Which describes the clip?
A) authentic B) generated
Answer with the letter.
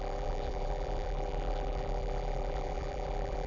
B